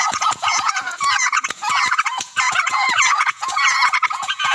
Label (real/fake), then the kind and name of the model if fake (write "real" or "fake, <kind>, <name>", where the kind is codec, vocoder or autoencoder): fake, vocoder, Vocos